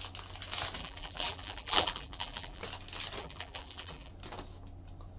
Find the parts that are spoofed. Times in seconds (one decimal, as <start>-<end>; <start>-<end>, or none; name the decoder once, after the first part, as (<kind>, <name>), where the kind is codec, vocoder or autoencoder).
0.8-2.6 (vocoder, BigVGAN v2); 3.2-4.1